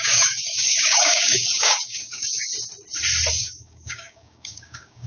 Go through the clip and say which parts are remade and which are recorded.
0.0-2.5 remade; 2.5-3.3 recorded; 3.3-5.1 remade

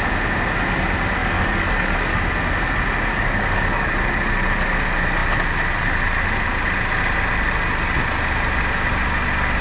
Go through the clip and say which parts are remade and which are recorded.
0.0-1.2 recorded; 1.2-2.2 remade; 2.2-3.1 recorded; 3.1-3.9 remade; 3.9-9.6 recorded

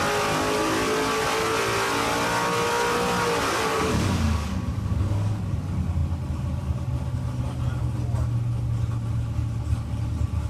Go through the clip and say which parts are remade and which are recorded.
0.0-3.7 recorded; 3.7-5.4 remade; 5.4-10.5 recorded

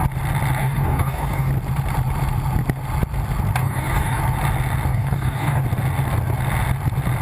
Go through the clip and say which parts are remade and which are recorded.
0.0-0.6 recorded; 0.6-1.5 remade; 1.5-3.6 recorded; 3.6-4.2 remade; 4.2-4.9 recorded; 4.9-5.6 remade; 5.6-7.2 recorded

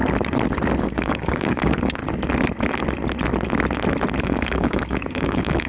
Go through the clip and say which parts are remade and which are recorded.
0.0-0.8 recorded; 0.8-2.0 remade; 2.0-4.2 recorded; 4.2-5.7 remade